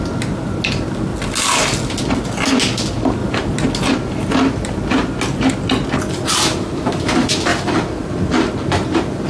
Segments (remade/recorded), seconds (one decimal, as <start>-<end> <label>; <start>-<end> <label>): 0.0-9.3 recorded